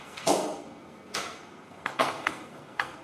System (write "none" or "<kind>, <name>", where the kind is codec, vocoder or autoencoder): codec, SNAC